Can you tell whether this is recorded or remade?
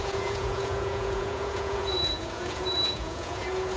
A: remade